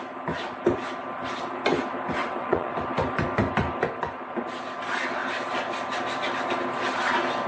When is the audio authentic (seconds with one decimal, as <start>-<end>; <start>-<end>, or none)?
0.0-2.2; 2.7-7.5